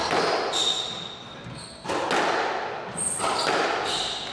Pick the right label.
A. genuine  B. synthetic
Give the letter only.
A